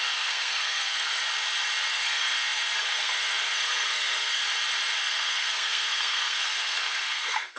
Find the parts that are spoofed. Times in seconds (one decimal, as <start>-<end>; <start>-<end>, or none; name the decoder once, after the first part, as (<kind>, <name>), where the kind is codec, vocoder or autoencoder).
0.0-1.2 (codec, SNAC); 1.9-4.4; 5.0-7.6